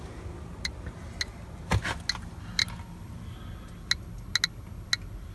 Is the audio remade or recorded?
recorded